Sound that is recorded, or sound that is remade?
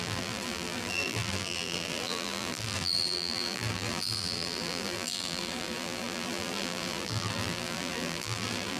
remade